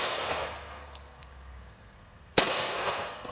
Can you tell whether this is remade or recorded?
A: remade